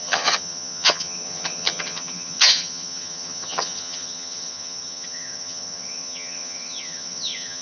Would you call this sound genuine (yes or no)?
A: no